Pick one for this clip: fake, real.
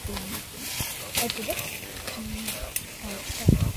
real